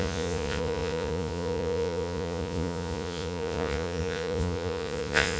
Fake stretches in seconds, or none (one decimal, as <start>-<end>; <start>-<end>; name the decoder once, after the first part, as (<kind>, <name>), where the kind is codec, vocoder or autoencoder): 0.0-5.4 (vocoder, Vocos)